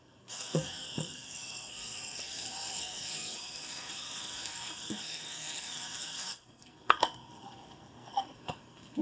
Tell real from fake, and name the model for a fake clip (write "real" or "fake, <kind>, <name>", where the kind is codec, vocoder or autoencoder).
fake, codec, SNAC